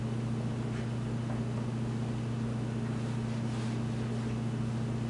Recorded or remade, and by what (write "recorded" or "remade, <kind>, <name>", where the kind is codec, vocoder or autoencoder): recorded